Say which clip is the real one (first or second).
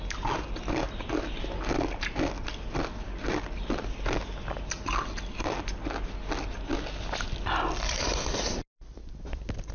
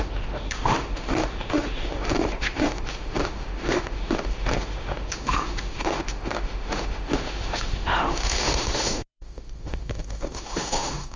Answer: first